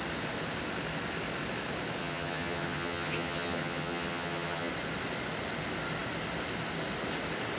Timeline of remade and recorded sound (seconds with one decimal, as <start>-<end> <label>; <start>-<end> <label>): 0.0-2.0 recorded; 2.0-4.7 remade; 4.7-7.6 recorded